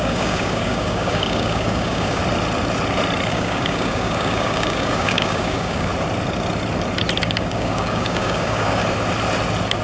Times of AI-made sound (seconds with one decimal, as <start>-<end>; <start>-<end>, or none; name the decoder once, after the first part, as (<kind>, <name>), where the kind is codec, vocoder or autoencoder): 0.0-2.2 (codec, DAC); 3.3-5.9; 7.2-8.8